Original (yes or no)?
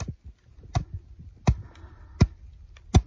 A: yes